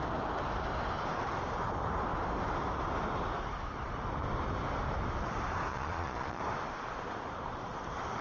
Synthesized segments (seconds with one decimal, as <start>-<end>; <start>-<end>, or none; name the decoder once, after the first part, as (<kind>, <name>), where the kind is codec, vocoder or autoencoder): 5.7-6.4 (vocoder, Vocos)

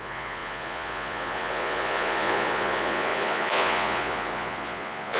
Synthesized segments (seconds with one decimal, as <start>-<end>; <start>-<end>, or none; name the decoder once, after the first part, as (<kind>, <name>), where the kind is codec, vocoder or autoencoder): 0.0-5.2 (vocoder, Vocos)

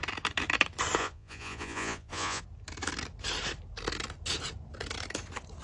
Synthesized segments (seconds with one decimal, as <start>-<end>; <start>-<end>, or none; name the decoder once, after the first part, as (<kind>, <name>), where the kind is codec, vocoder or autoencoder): 1.0-2.4 (vocoder, Vocos)